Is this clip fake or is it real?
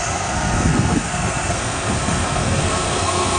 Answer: fake